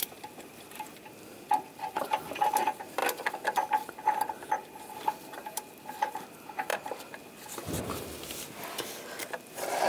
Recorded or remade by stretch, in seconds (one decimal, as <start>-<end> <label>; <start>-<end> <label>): 0.0-6.7 remade; 6.7-9.9 recorded